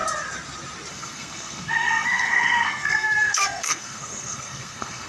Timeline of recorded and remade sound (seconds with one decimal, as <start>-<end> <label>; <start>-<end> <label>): 0.0-0.9 recorded; 0.9-5.1 remade